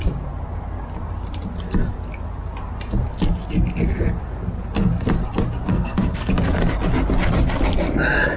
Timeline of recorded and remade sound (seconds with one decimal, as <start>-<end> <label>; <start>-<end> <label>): 0.0-5.7 recorded; 5.7-6.3 remade; 6.3-8.4 recorded